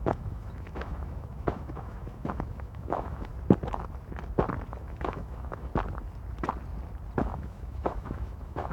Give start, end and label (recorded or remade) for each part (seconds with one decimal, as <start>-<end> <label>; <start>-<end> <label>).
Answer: 0.0-3.3 remade; 3.3-4.8 recorded; 4.8-5.7 remade; 5.7-7.2 recorded; 7.2-8.7 remade

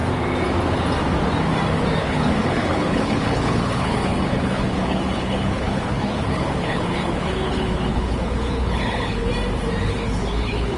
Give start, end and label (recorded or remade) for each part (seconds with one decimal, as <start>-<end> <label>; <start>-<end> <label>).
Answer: 0.0-2.0 recorded; 2.0-9.3 remade; 9.3-9.8 recorded; 9.8-10.8 remade

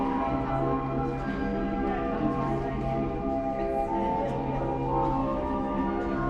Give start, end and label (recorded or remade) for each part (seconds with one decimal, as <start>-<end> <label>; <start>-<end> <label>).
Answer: 0.0-5.2 recorded; 5.2-5.8 remade; 5.8-6.3 recorded

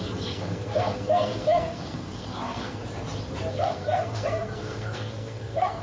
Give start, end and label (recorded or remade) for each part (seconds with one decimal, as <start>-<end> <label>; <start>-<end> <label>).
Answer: 0.0-2.8 remade; 2.8-3.5 recorded; 3.5-5.8 remade

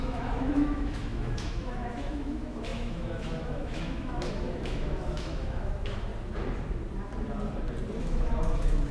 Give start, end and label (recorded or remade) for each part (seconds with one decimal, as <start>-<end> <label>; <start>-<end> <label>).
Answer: 0.0-6.1 remade; 6.1-8.0 recorded; 8.0-8.9 remade

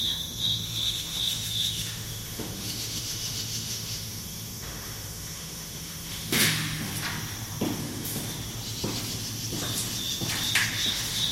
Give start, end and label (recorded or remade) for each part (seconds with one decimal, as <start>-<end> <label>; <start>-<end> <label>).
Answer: 0.0-6.9 remade; 6.9-7.8 recorded; 7.8-8.2 remade; 8.2-10.9 recorded; 10.9-11.3 remade

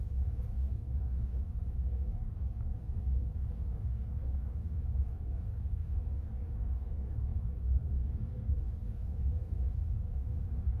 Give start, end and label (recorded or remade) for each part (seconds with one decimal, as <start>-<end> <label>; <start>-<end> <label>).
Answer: 0.0-10.8 remade

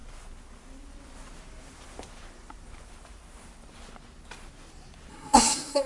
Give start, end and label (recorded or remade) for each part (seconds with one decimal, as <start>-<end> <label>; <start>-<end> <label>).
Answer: 0.0-5.1 recorded; 5.1-5.9 remade